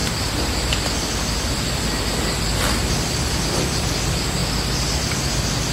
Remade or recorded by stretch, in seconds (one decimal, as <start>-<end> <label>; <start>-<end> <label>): 0.0-5.7 recorded